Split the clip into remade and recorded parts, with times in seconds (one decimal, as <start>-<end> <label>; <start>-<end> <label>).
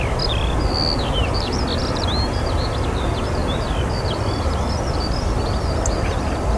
0.0-6.6 recorded